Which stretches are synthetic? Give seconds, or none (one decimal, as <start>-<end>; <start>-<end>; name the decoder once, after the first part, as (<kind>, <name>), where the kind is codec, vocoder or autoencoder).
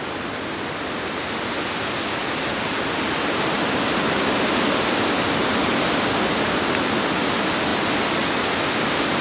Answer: none